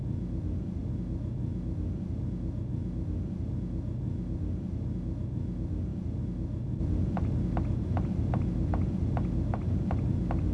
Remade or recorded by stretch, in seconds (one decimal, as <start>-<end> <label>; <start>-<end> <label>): 0.0-10.5 recorded